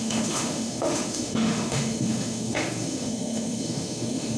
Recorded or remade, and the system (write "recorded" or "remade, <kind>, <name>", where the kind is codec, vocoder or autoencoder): remade, autoencoder, DAC-VAE